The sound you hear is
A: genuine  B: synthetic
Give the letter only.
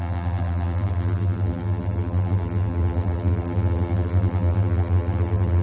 B